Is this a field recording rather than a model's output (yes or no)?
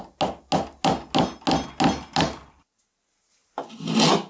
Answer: yes